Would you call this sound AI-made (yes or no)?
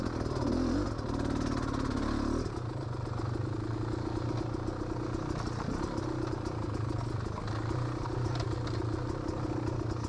no